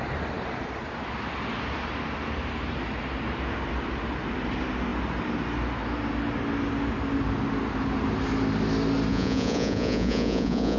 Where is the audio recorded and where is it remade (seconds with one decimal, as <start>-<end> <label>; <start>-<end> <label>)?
0.0-9.1 recorded; 9.1-10.8 remade